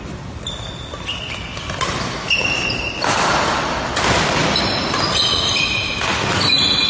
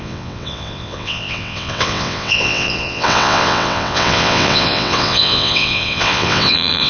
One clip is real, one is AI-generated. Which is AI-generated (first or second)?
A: second